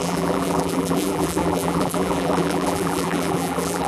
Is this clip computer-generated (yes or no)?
yes